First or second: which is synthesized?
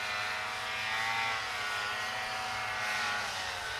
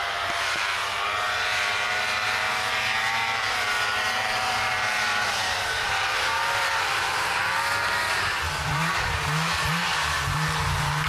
second